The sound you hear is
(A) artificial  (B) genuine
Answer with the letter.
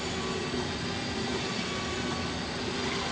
B